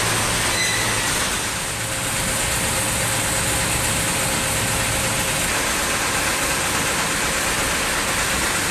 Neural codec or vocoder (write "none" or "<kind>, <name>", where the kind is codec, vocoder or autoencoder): none